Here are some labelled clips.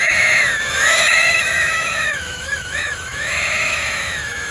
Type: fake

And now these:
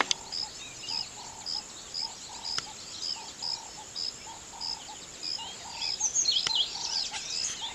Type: real